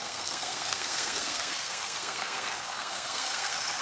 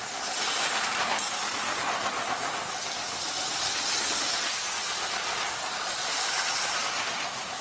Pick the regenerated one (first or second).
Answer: first